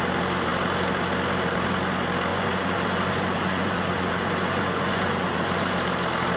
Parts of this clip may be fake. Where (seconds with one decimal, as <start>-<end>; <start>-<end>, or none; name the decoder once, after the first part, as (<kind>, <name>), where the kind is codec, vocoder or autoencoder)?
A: 2.3-5.7 (vocoder, Vocos)